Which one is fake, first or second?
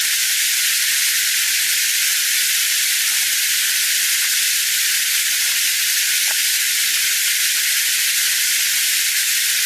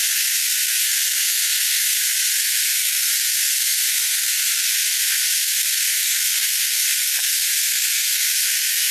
second